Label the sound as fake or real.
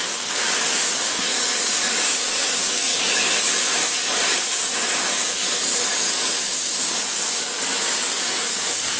fake